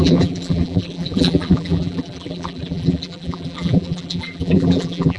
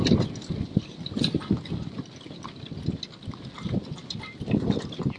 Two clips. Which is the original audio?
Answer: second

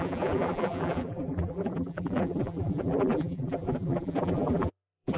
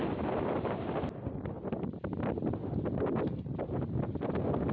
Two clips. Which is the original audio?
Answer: second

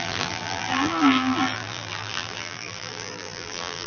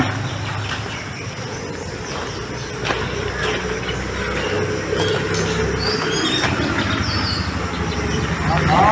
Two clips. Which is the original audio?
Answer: second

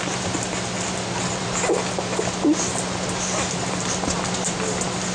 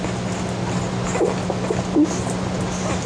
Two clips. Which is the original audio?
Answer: second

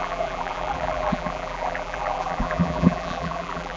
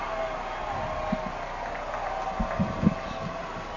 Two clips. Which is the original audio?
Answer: second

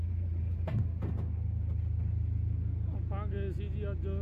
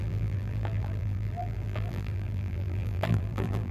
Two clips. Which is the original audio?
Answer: first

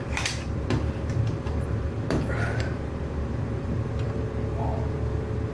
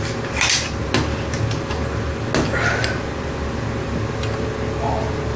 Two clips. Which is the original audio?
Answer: second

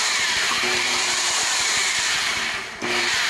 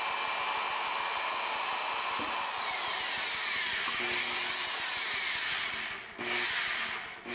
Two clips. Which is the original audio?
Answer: second